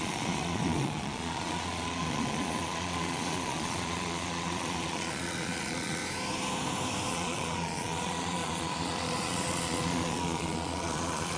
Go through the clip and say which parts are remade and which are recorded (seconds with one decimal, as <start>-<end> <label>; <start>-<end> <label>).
0.0-6.0 remade; 6.0-7.1 recorded; 7.1-11.4 remade